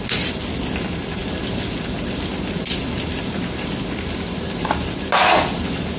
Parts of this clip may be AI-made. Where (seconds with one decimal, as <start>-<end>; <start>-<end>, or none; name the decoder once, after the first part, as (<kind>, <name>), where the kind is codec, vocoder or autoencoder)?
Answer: none